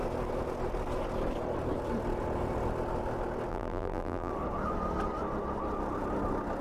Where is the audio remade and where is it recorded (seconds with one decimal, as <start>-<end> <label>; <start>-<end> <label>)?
0.0-3.5 recorded; 3.5-4.3 remade; 4.3-6.6 recorded